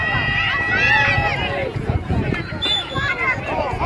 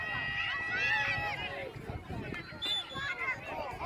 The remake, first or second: first